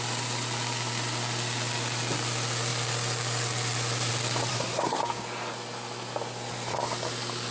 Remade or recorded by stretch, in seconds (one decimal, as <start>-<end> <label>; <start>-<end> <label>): 0.0-4.5 recorded; 4.5-5.0 remade; 5.0-7.5 recorded